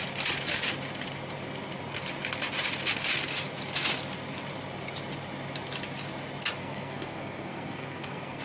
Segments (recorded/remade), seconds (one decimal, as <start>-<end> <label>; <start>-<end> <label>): 0.0-6.6 recorded; 6.6-8.4 remade